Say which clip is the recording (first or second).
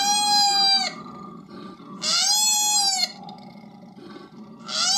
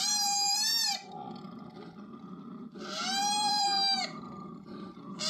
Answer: first